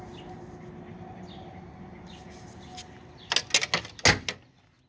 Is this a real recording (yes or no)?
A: yes